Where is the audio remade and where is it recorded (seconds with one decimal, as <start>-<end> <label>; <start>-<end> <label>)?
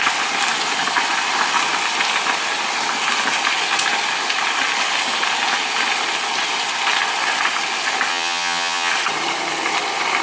0.0-8.1 recorded; 8.1-8.9 remade; 8.9-10.2 recorded